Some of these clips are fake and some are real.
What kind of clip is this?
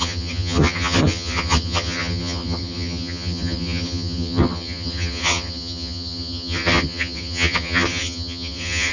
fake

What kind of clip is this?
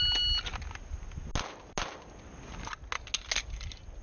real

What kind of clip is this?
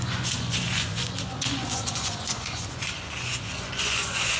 fake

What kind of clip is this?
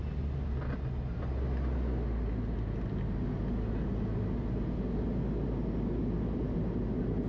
real